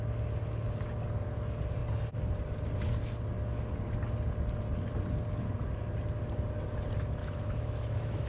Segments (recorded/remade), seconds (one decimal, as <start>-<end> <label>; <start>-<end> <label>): 0.0-7.2 recorded; 7.2-8.3 remade

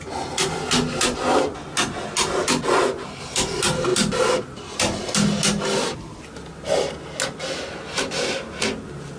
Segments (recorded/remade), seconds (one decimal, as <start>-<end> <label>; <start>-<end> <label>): 0.0-9.2 recorded